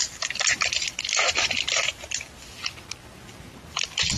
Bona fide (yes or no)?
no